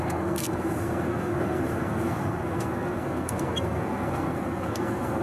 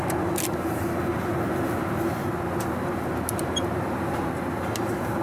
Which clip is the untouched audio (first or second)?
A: second